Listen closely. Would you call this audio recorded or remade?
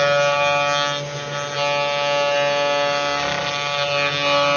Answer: recorded